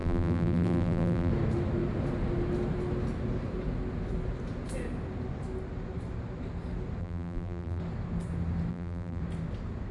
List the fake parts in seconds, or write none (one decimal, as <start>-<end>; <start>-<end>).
0.0-1.3; 7.0-7.8; 8.7-9.2